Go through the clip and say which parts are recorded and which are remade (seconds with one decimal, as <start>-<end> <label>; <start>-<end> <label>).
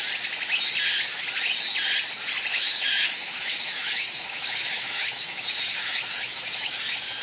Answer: 0.0-2.5 recorded; 2.5-6.8 remade; 6.8-7.2 recorded